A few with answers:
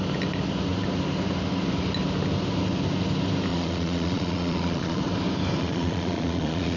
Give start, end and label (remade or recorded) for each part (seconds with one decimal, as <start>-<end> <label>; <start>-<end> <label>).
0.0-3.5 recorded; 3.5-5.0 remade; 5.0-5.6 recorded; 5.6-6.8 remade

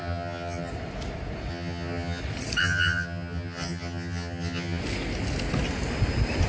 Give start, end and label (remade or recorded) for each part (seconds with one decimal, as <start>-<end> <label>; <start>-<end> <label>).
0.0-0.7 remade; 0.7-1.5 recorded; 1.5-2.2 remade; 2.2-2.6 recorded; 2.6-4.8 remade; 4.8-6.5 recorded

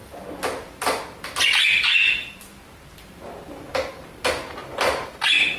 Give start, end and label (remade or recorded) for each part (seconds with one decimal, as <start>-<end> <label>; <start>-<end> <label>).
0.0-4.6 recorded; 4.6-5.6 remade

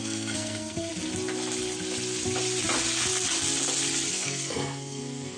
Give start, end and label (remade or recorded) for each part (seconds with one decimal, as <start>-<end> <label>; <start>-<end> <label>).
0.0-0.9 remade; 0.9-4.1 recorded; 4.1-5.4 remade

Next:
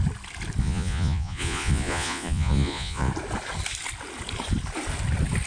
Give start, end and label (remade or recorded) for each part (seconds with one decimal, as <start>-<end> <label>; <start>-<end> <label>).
0.0-0.6 recorded; 0.6-3.1 remade; 3.1-5.5 recorded